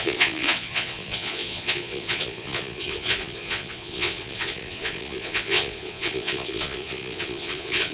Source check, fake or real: fake